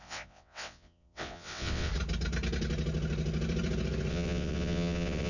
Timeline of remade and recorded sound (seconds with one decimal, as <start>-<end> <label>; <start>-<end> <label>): 0.0-1.9 remade; 1.9-4.1 recorded; 4.1-5.3 remade